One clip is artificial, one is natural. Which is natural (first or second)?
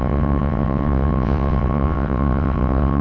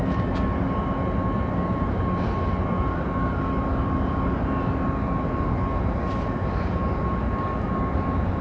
second